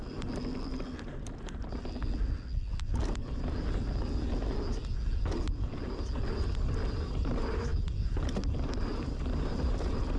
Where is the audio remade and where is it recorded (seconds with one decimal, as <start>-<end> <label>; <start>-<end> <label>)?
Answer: 0.0-10.2 recorded